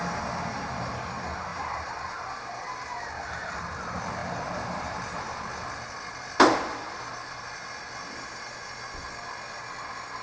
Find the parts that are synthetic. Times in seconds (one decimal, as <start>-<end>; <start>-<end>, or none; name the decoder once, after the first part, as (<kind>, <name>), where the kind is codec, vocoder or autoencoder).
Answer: 1.5-2.4 (vocoder, BigVGAN v2); 4.2-5.0; 6.8-7.4